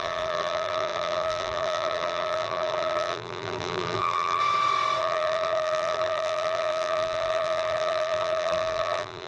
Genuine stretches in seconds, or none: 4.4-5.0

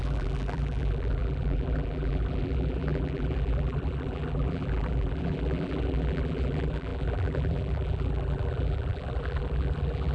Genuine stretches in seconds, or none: none

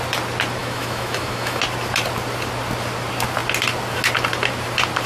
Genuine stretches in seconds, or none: 0.0-0.6; 1.6-5.1

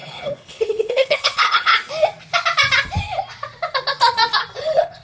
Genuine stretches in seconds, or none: 1.7-4.6

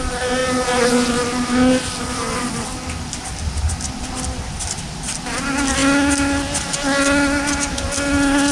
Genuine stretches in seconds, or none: 0.0-8.5

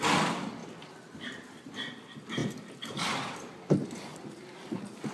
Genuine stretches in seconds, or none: 0.0-4.1

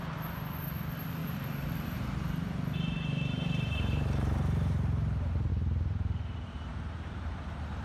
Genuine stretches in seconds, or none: 6.7-7.2